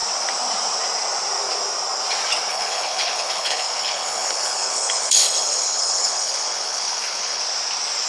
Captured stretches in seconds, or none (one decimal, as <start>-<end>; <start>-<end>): 0.0-2.5; 7.4-8.1